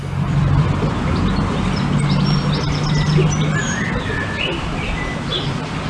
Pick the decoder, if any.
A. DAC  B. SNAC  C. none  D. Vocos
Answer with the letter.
C